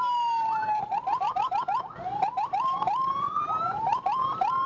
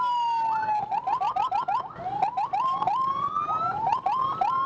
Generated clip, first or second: first